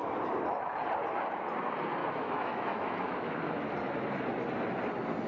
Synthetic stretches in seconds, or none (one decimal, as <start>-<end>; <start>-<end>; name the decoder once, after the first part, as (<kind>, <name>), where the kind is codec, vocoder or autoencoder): 2.0-3.7 (autoencoder, DAC-VAE)